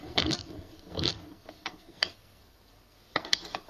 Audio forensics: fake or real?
fake